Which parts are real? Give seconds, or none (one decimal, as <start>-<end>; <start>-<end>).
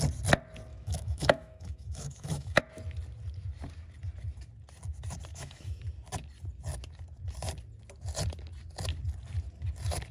0.0-0.7; 2.6-5.3; 5.8-10.1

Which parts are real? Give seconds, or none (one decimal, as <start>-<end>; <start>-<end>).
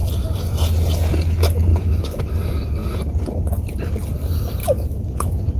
0.0-1.7; 2.3-4.6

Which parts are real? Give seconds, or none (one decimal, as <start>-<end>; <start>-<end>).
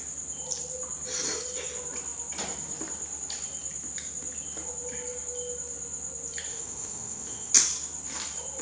0.0-6.5; 7.5-8.6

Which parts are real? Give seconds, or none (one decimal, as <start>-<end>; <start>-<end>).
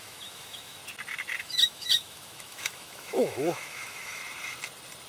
0.8-1.4; 4.2-5.1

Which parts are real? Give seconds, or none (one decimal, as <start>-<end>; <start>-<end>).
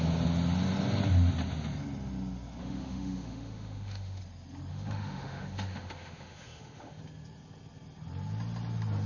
0.0-2.6; 4.2-4.7; 7.0-9.1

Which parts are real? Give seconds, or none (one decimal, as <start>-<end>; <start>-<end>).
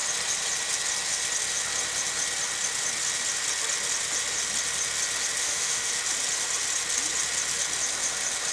0.0-5.4; 5.9-8.5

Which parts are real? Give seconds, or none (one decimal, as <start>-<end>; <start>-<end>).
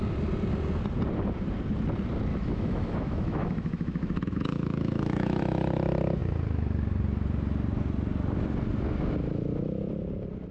0.0-2.3; 5.4-10.5